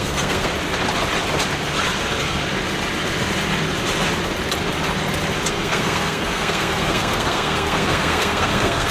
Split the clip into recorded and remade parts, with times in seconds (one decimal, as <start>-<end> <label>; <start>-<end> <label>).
0.0-0.5 remade; 0.5-5.5 recorded; 5.5-8.9 remade